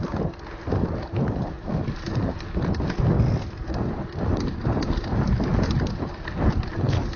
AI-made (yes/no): no